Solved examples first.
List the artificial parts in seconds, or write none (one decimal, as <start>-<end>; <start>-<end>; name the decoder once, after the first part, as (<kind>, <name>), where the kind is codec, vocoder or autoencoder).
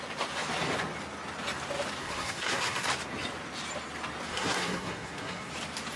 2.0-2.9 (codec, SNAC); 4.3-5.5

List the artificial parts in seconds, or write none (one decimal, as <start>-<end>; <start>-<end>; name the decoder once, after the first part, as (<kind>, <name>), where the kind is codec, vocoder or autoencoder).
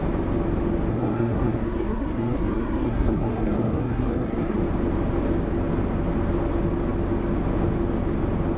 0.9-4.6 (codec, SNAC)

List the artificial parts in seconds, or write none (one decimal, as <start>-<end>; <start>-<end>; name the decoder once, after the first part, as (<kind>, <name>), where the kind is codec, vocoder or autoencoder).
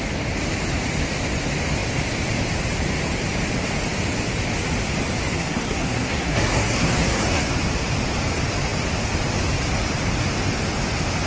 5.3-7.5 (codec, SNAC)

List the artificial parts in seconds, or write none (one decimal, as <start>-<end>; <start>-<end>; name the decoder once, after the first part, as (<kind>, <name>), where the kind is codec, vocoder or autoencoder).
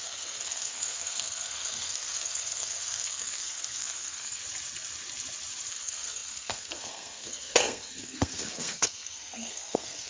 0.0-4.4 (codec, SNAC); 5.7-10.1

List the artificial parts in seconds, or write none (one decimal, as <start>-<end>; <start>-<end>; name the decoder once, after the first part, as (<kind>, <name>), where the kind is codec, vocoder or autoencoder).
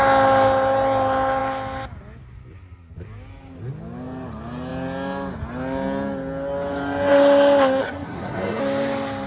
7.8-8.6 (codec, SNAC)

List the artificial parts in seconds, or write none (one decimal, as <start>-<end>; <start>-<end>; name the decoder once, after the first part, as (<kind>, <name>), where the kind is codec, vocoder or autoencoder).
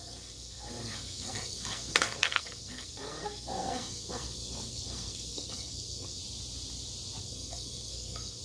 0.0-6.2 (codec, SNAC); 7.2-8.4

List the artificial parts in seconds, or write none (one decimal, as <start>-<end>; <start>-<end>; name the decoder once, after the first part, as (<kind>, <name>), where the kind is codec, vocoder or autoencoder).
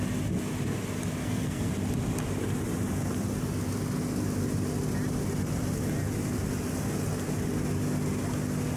1.2-1.7 (codec, SNAC)